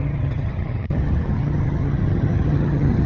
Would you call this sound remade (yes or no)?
yes